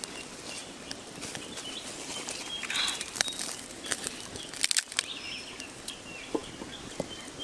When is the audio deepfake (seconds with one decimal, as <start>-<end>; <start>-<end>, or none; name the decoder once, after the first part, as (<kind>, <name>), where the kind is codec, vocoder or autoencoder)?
0.6-4.3 (vocoder, BigVGAN v2)